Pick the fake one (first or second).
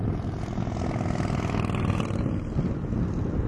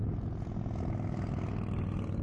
first